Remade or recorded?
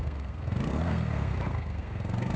remade